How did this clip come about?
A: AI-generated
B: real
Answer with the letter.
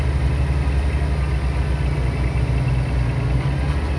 B